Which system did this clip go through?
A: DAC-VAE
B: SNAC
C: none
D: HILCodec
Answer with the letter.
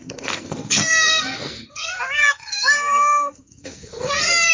B